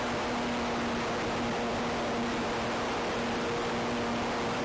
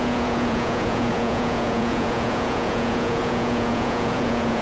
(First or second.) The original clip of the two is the first